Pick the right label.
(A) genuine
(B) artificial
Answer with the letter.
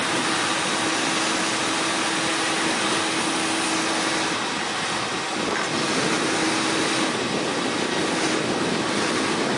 A